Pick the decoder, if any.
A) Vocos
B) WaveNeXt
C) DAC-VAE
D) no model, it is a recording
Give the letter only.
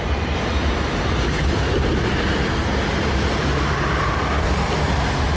D